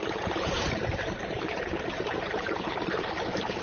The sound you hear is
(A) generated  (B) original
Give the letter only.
A